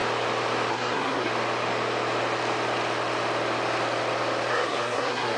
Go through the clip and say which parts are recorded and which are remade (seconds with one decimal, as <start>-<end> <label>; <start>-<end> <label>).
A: 0.0-0.7 recorded; 0.7-1.3 remade; 1.3-4.5 recorded; 4.5-5.4 remade